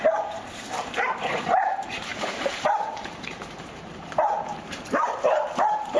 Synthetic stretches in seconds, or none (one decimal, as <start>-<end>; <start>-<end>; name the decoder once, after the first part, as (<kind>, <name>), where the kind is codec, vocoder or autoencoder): 0.0-6.0 (vocoder, BigVGAN v2)